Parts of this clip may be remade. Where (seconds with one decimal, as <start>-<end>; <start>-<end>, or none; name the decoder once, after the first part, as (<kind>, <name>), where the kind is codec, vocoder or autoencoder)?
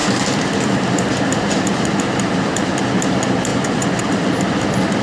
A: 3.5-4.0 (vocoder, Vocos)